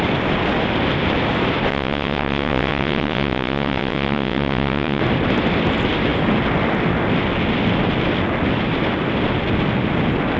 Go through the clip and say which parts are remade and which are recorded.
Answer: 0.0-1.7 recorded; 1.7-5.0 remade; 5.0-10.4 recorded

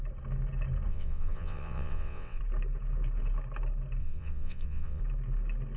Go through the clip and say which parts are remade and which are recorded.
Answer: 0.0-0.9 recorded; 0.9-2.4 remade; 2.4-4.0 recorded; 4.0-5.0 remade; 5.0-5.8 recorded

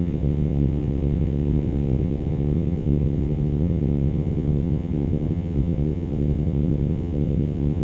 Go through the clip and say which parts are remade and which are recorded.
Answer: 0.0-7.8 remade

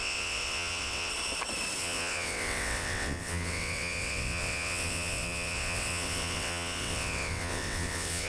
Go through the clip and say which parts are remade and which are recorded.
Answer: 0.0-1.1 remade; 1.1-1.8 recorded; 1.8-8.3 remade

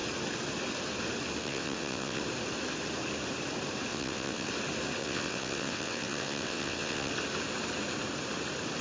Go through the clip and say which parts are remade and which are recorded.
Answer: 0.0-1.4 recorded; 1.4-2.2 remade; 2.2-3.9 recorded; 3.9-4.5 remade; 4.5-5.0 recorded; 5.0-7.1 remade; 7.1-8.8 recorded

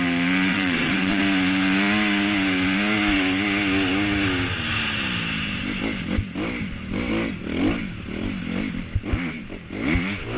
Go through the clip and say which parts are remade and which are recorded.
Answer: 0.0-0.5 recorded; 0.5-1.2 remade; 1.2-10.4 recorded

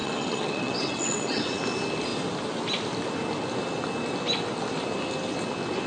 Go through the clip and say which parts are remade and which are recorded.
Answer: 0.0-1.6 remade; 1.6-5.9 recorded